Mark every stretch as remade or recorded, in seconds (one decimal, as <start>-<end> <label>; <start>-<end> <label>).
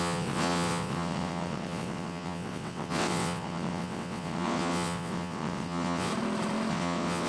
0.0-6.1 remade; 6.1-6.7 recorded; 6.7-7.3 remade